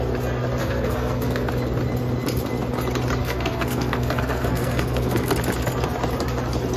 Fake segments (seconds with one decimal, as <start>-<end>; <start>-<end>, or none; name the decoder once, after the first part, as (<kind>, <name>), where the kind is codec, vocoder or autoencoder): 0.6-1.5 (codec, SNAC); 3.2-5.3